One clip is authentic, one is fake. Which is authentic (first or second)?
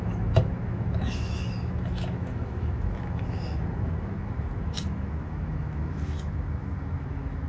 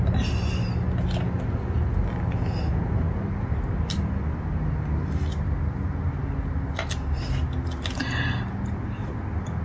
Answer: second